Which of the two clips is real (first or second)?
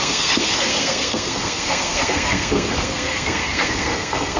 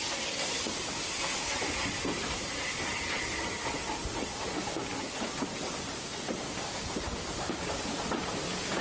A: second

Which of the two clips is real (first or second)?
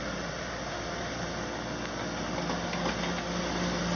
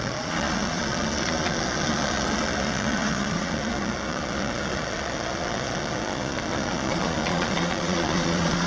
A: first